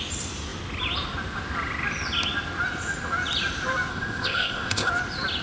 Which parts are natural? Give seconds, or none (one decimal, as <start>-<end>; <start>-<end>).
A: 0.0-3.9; 4.9-5.4